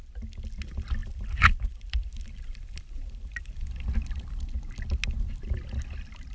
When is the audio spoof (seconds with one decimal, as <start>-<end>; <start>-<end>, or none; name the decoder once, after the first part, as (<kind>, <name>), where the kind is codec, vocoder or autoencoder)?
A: 1.0-4.4 (vocoder, BigVGAN v2)